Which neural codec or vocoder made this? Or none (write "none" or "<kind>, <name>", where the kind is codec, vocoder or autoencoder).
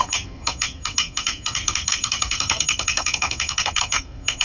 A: codec, SNAC